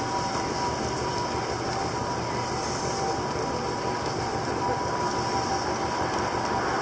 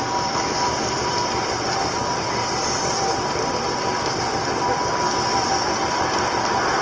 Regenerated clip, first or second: second